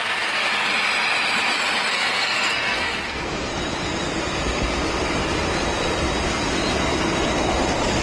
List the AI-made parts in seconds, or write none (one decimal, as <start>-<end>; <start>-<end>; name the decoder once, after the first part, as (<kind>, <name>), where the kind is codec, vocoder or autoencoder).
0.0-0.5 (codec, SNAC); 1.9-3.5